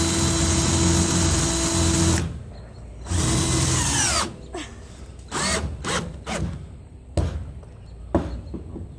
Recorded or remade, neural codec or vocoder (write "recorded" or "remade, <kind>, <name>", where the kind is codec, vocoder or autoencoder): recorded